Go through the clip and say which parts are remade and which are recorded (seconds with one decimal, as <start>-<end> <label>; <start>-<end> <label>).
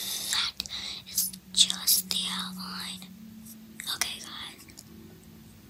0.0-5.7 recorded